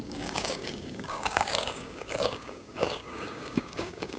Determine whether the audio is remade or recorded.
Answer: remade